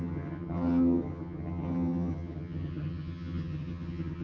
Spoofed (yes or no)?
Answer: yes